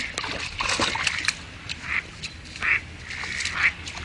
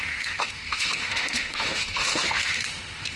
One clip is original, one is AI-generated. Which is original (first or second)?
first